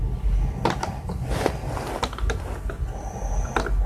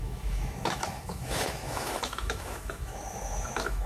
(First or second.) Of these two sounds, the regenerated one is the second